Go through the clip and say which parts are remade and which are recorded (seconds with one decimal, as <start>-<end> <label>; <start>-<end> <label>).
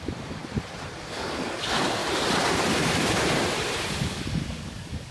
0.0-0.4 remade; 0.4-1.0 recorded; 1.0-2.0 remade; 2.0-4.0 recorded; 4.0-5.1 remade